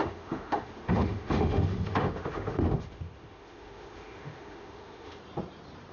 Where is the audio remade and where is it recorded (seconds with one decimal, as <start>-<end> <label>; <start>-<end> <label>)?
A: 0.0-5.2 remade; 5.2-5.9 recorded